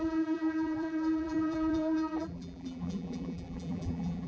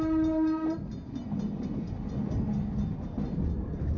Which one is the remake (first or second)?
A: first